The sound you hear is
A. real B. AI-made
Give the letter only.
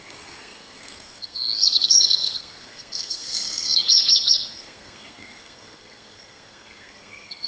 B